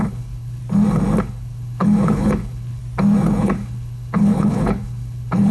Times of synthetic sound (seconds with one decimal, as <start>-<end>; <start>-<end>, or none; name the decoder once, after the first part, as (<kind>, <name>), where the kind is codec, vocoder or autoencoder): 0.0-0.6 (codec, HILCodec); 1.2-2.8; 3.4-5.5